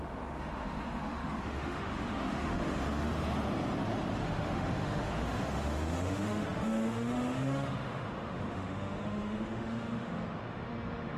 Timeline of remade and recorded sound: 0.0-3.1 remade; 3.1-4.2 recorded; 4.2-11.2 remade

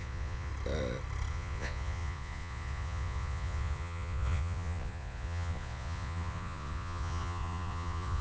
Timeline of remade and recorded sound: 0.0-0.5 remade; 0.5-1.3 recorded; 1.3-8.2 remade

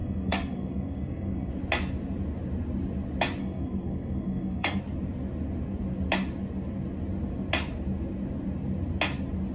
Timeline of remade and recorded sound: 0.0-1.5 remade; 1.5-3.4 recorded; 3.4-4.8 remade; 4.8-9.5 recorded

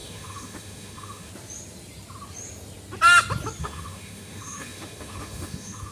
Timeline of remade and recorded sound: 0.0-1.3 remade; 1.3-3.6 recorded; 3.6-5.9 remade